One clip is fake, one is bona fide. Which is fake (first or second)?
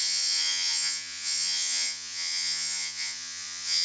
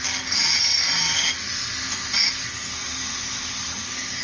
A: first